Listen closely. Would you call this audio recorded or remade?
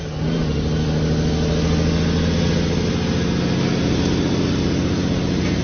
recorded